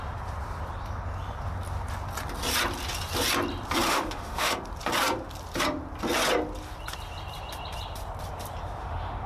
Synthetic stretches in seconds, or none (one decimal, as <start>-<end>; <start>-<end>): 3.9-4.5; 8.8-9.3